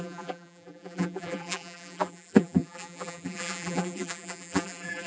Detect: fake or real fake